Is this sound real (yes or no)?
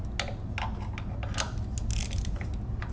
yes